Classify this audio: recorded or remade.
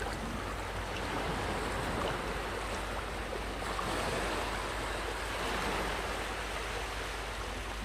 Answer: recorded